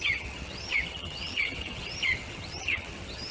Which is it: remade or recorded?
remade